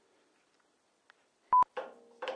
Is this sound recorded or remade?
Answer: recorded